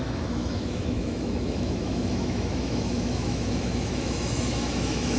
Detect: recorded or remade remade